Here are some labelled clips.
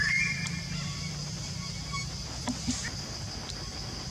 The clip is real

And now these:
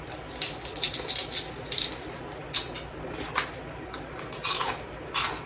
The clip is real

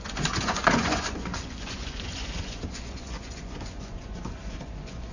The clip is fake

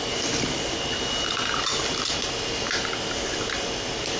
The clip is real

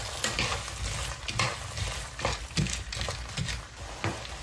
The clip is real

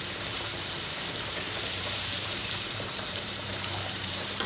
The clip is fake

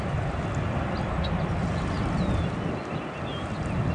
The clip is real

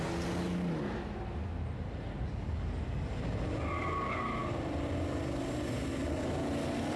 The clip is real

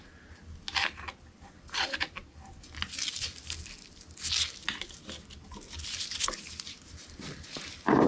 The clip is real